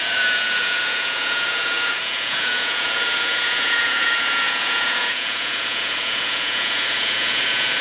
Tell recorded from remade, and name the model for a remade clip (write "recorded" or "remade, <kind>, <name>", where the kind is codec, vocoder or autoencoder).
remade, vocoder, Vocos